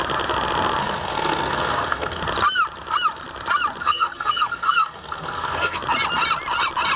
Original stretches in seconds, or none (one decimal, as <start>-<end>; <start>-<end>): 0.0-0.8; 2.2-3.8; 5.8-7.0